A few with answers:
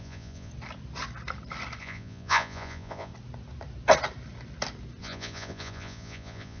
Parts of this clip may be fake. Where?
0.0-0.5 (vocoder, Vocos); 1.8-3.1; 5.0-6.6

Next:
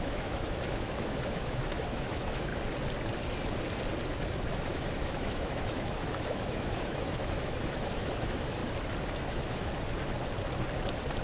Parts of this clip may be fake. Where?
0.0-2.5 (autoencoder, DAC-VAE); 4.5-8.6; 9.1-9.7